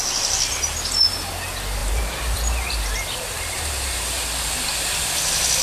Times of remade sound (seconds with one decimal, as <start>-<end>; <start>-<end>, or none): 1.8-4.2